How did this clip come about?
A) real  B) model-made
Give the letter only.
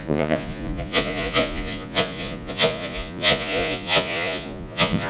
B